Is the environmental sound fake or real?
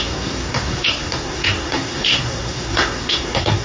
fake